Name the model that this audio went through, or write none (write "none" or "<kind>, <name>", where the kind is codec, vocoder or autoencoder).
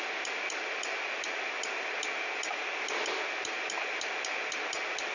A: none